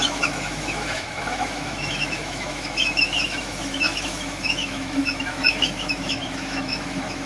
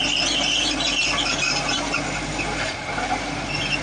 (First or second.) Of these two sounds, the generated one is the first